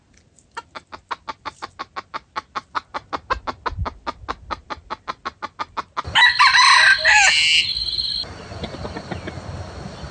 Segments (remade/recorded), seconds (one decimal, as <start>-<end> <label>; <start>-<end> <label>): 0.0-10.1 recorded